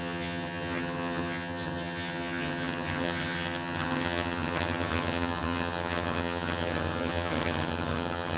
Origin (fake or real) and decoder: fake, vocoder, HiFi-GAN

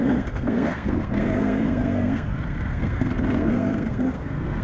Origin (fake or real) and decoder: fake, codec, SNAC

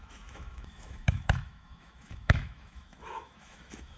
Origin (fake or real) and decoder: fake, autoencoder, DAC-VAE